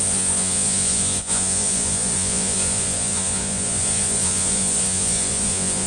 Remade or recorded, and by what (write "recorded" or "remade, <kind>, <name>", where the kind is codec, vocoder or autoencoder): remade, vocoder, Vocos